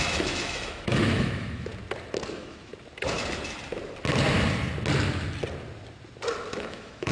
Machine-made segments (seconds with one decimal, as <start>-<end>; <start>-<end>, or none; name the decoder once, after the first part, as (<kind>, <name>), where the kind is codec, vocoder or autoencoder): 0.0-1.7 (autoencoder, DAC-VAE); 2.3-2.7; 6.5-7.1